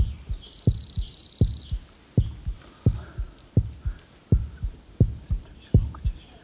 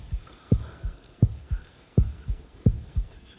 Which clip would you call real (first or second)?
first